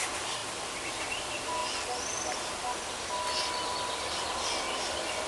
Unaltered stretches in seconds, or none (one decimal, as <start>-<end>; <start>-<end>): 0.0-5.3